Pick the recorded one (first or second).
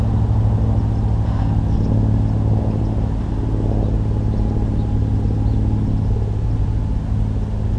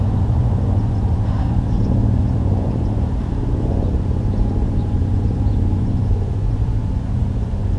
first